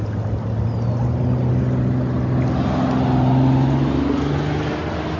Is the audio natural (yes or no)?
yes